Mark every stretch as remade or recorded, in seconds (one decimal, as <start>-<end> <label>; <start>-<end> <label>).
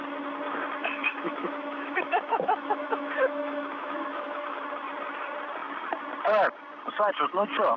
0.0-0.8 recorded; 0.8-4.6 remade; 4.6-7.8 recorded